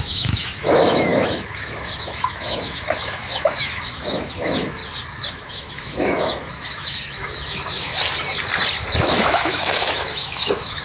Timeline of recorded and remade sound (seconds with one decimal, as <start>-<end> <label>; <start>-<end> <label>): 0.0-4.8 remade; 4.8-5.3 recorded; 5.3-7.9 remade; 7.9-9.0 recorded; 9.0-10.8 remade

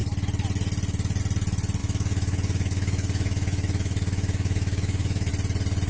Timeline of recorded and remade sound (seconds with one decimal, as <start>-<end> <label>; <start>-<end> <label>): 0.0-1.8 recorded; 1.8-5.3 remade; 5.3-5.9 recorded